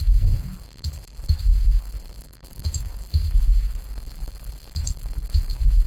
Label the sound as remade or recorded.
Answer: remade